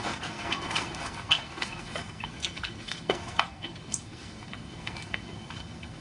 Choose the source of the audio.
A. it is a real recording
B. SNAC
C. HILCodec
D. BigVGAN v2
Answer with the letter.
B